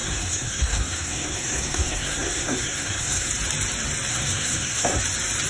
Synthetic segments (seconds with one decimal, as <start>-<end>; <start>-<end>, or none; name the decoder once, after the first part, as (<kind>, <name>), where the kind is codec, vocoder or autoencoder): 0.0-3.3 (codec, SNAC); 4.1-5.0